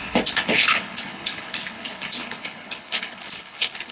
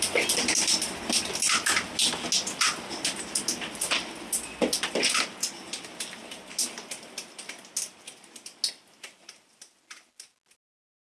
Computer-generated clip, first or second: first